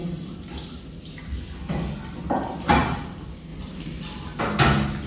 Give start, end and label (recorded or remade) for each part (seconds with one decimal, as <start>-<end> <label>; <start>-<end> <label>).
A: 0.0-5.1 recorded